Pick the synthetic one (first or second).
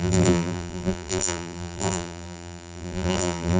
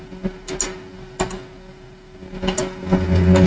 first